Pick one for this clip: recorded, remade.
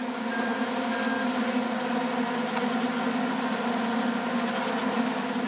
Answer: recorded